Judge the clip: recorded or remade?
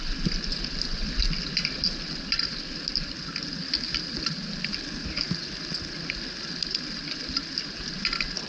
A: recorded